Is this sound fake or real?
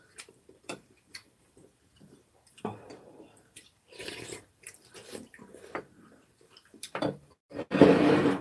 fake